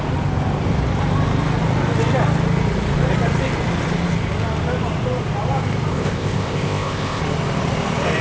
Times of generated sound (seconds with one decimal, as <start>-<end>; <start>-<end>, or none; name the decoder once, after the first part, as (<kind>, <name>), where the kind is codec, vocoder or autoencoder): 5.9-7.2 (codec, ZipCodec)